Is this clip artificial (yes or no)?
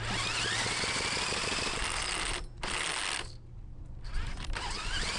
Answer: no